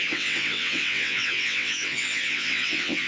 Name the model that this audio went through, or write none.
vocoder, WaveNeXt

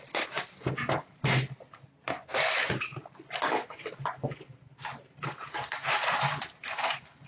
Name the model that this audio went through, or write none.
none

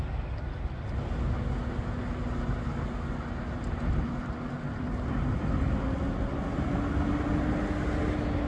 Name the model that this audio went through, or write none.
none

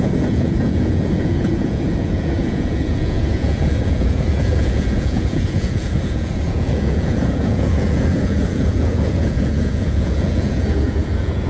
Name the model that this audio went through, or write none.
vocoder, Vocos